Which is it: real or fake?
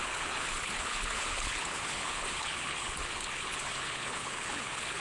fake